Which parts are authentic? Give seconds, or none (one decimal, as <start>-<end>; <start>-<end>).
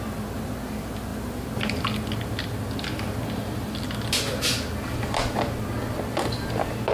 0.0-1.1; 1.7-6.9